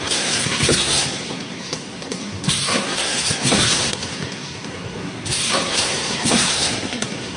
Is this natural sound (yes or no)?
no